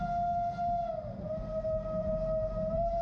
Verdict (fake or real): real